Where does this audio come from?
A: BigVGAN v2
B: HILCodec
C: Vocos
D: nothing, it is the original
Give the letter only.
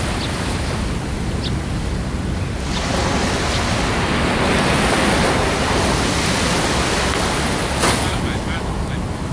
D